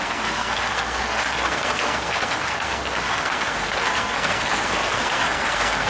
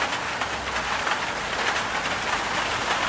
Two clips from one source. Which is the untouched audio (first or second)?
second